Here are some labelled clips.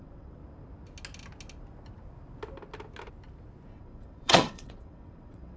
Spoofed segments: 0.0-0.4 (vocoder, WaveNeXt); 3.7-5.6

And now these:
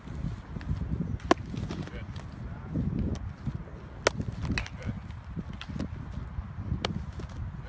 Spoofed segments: none

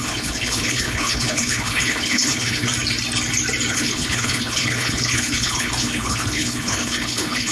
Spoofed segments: 0.0-2.7 (codec, HILCodec); 3.7-7.5

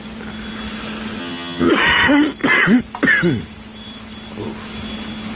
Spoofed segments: 1.2-1.7 (vocoder, HiFi-GAN)

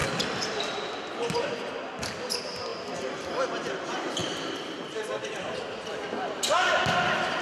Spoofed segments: 2.7-3.6 (vocoder, BigVGAN v2); 4.2-5.8

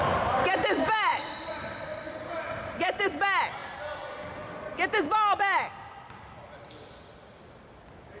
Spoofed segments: 1.1-3.2 (vocoder, BigVGAN v2)